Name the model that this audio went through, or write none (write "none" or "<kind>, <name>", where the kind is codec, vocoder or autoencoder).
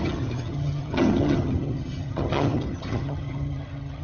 vocoder, HiFi-GAN